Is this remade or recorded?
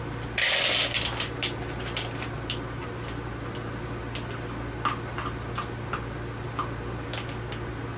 recorded